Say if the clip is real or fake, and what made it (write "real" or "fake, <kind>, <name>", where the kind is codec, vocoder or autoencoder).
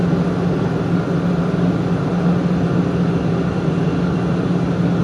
real